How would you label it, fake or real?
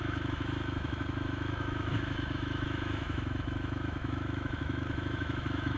fake